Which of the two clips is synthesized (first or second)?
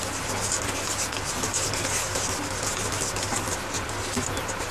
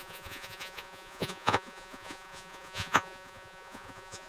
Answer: second